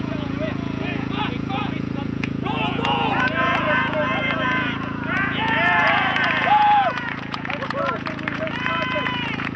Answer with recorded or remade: remade